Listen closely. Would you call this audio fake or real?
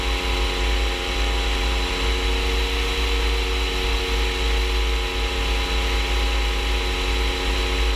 real